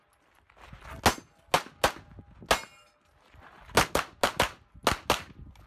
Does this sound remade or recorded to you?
recorded